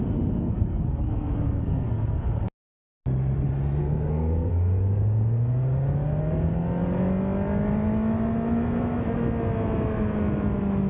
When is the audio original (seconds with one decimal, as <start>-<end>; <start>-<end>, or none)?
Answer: 0.0-0.4; 2.3-3.8; 4.5-10.9